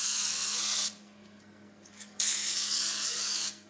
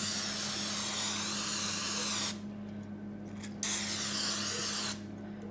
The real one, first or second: second